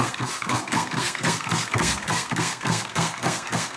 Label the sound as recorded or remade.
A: remade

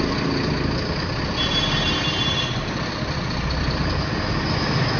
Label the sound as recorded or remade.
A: recorded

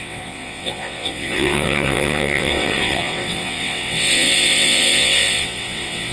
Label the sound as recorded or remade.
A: remade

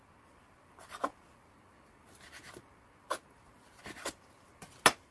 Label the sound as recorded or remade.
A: recorded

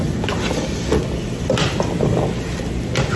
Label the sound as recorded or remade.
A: recorded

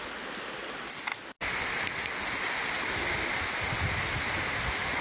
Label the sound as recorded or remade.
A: recorded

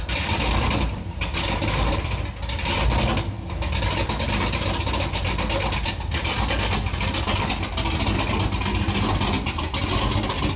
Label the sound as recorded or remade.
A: recorded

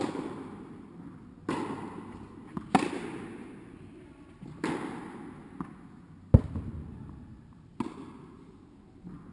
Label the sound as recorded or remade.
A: recorded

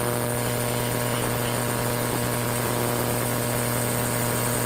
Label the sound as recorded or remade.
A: recorded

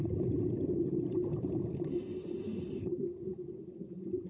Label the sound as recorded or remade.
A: recorded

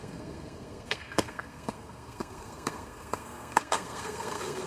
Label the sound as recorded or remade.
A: remade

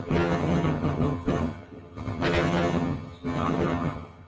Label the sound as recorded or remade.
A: remade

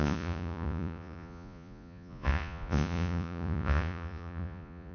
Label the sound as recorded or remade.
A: remade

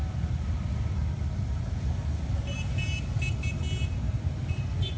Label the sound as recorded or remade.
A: recorded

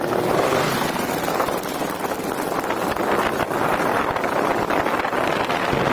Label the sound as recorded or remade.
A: recorded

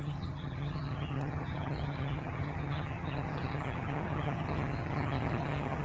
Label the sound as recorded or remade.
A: remade